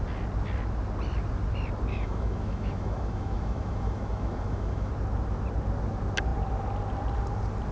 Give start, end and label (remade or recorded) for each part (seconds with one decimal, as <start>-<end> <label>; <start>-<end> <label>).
0.0-1.9 recorded; 1.9-4.9 remade; 4.9-7.7 recorded